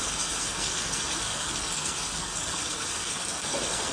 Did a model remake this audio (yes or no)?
yes